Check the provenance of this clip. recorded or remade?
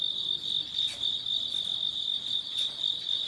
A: recorded